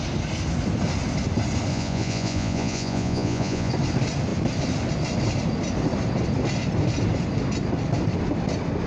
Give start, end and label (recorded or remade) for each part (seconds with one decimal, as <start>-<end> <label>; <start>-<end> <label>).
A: 0.0-1.7 recorded; 1.7-3.7 remade; 3.7-8.9 recorded